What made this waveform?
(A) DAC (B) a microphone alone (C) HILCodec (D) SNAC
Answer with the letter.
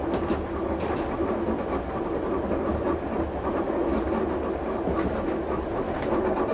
B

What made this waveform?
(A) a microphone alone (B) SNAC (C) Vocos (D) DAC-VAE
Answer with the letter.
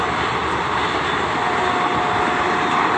A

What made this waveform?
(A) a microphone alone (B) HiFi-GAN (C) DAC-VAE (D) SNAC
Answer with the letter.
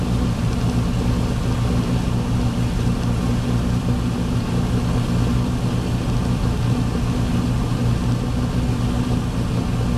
A